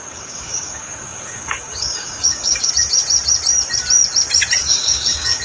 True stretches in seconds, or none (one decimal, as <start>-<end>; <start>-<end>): 2.7-4.6